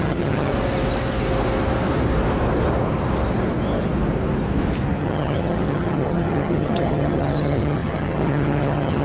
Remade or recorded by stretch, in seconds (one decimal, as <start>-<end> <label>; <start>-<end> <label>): 0.0-0.5 remade; 0.5-5.0 recorded; 5.0-9.0 remade